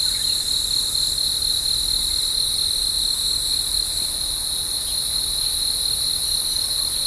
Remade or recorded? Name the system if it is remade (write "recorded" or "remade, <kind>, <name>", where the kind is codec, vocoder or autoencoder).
recorded